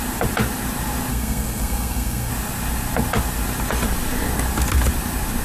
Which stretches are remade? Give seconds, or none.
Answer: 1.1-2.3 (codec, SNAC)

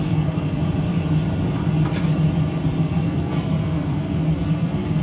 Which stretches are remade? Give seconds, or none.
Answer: 0.0-0.6 (codec, SNAC); 2.8-5.0

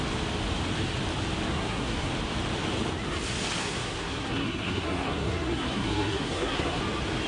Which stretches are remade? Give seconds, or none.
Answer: 1.5-2.1 (codec, SNAC); 3.6-6.8

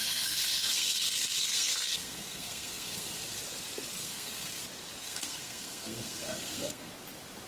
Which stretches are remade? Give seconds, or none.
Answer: 0.0-3.2 (codec, SNAC); 4.0-4.6; 5.0-6.9

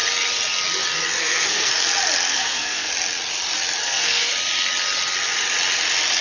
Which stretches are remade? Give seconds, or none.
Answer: 1.2-1.7 (codec, SNAC); 2.3-2.9; 3.8-4.3

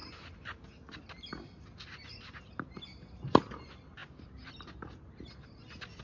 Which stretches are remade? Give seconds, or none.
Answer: none